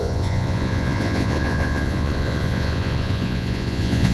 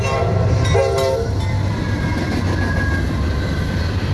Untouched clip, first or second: second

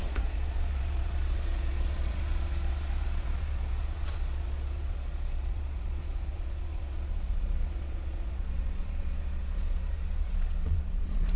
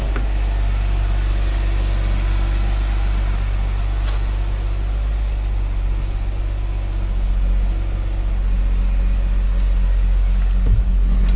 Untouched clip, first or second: second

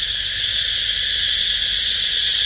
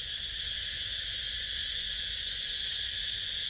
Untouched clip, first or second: first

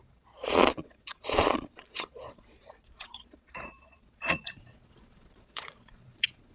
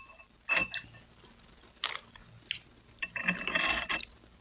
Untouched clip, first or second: second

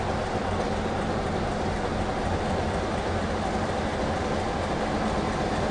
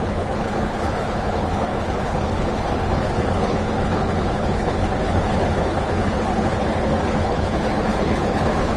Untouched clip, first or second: first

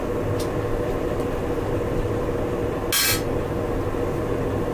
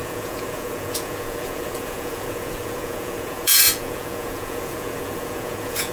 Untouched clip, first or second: first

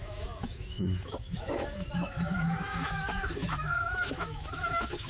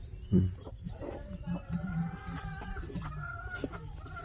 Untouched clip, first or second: second